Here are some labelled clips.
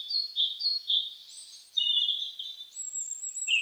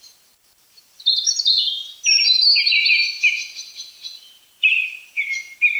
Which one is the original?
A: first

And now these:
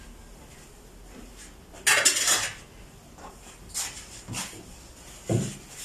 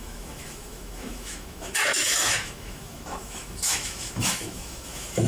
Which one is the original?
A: first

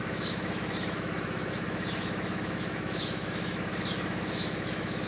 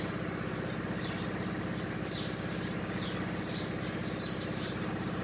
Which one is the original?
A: second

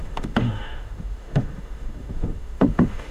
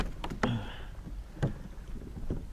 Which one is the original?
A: second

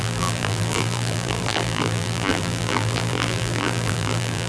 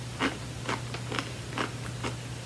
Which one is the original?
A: second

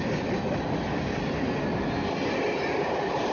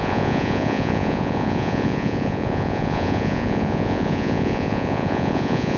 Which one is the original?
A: first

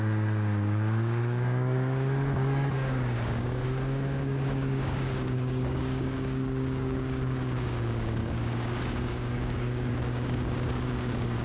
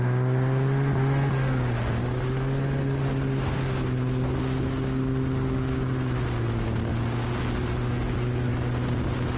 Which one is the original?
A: second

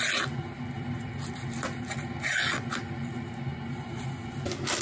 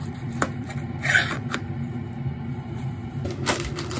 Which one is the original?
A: first